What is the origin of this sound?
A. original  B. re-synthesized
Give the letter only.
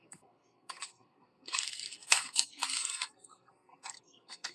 B